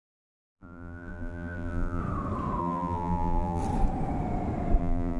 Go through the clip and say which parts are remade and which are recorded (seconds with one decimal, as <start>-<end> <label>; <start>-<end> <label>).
0.0-2.0 remade; 2.0-2.6 recorded; 2.6-3.6 remade; 3.6-4.8 recorded; 4.8-5.2 remade